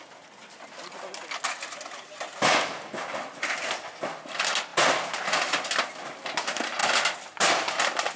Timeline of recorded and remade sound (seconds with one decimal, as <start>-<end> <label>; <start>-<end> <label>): 0.0-8.2 recorded